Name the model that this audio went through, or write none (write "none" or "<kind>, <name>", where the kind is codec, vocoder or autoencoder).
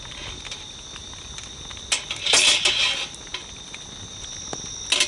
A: none